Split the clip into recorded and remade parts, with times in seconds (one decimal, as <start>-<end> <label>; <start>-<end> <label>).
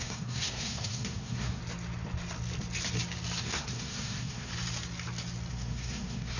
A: 0.0-1.6 remade; 1.6-3.4 recorded; 3.4-4.5 remade; 4.5-5.5 recorded; 5.5-6.4 remade